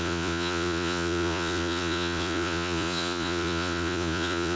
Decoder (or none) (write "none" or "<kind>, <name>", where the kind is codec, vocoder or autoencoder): vocoder, Vocos